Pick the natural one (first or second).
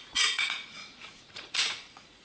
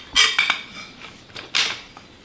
second